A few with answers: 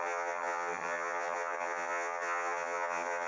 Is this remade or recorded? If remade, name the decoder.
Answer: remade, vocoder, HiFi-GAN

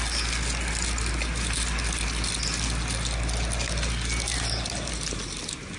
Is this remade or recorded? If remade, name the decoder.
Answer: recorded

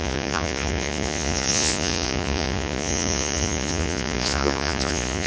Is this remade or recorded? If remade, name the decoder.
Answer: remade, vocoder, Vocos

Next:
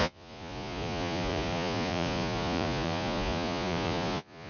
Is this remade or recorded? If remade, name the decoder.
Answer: remade, vocoder, Vocos